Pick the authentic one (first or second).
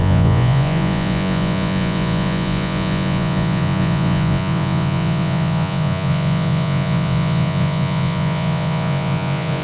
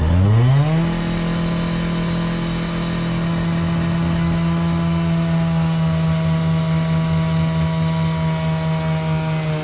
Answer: second